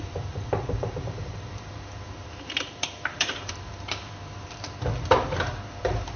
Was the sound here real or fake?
fake